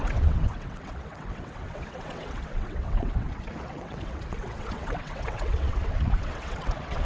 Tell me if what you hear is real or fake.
fake